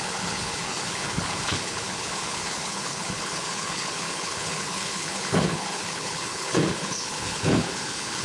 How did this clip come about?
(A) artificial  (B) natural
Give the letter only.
A